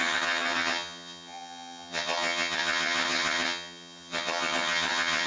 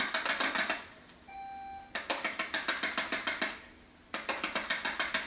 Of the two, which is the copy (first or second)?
first